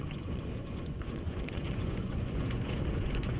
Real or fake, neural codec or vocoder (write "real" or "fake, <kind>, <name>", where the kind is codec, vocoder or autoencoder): fake, vocoder, Vocos